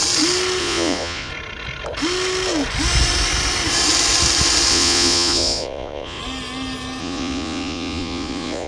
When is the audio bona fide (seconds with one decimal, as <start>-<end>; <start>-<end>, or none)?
0.0-0.6; 1.3-4.7; 6.2-7.0